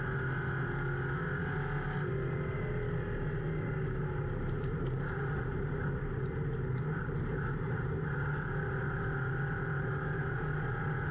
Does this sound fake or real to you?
real